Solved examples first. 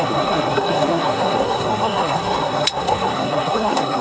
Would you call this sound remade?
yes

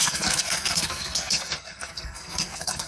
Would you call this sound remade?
yes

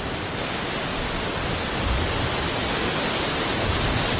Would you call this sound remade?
no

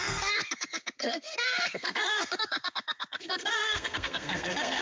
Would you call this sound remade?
yes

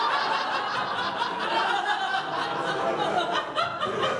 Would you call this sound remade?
no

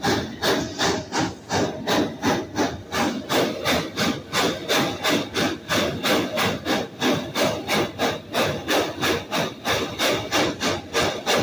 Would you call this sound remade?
no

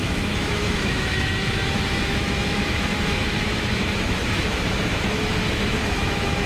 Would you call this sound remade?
yes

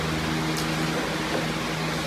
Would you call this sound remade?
no